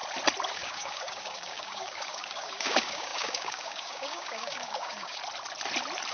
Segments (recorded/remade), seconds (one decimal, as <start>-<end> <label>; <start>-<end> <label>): 0.0-0.5 recorded; 0.5-5.2 remade; 5.2-6.1 recorded